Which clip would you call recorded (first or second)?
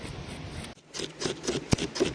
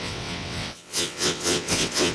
first